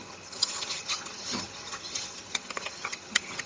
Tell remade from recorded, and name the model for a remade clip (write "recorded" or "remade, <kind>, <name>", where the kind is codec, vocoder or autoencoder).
remade, vocoder, HiFi-GAN